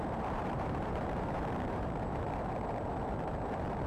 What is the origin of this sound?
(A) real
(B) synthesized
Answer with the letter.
B